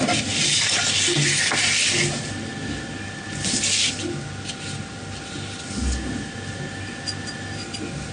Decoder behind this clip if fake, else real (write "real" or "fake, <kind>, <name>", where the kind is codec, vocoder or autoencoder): real